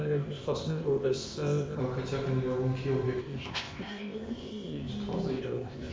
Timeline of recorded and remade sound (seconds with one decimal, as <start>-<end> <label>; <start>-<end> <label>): 0.0-1.8 remade; 1.8-3.2 recorded; 3.2-4.9 remade; 4.9-5.4 recorded; 5.4-5.9 remade